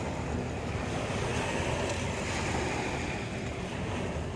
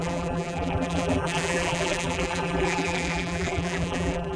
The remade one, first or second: second